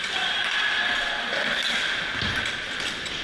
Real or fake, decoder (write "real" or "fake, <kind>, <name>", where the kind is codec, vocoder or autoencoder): real